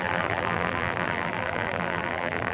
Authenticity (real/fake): fake